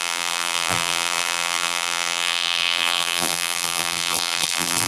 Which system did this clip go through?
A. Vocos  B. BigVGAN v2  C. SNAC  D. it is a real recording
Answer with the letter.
B